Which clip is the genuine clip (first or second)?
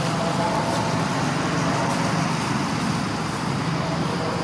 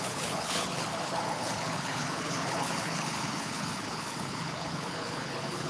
first